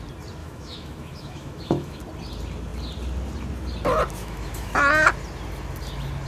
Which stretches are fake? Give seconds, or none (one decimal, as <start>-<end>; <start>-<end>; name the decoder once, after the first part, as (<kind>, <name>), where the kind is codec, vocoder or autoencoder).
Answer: 0.4-2.0 (autoencoder, DAC-VAE); 4.2-4.9